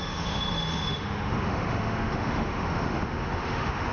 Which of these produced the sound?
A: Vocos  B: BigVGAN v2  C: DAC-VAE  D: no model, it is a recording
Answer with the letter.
C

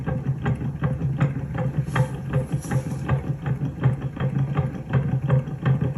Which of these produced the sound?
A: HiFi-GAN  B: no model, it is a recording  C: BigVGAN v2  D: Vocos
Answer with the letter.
B